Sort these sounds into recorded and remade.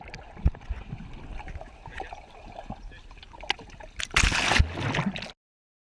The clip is recorded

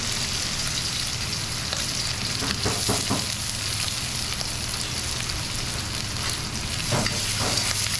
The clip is recorded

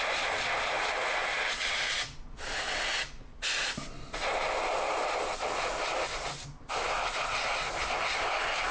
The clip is recorded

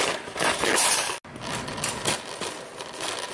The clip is recorded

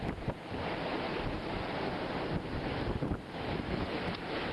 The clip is recorded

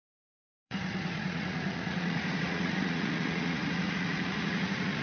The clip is remade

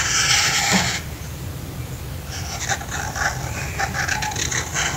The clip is recorded